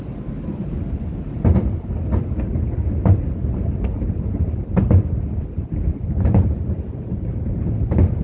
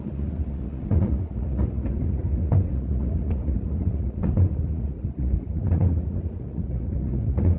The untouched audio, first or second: first